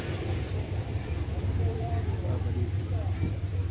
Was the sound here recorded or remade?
remade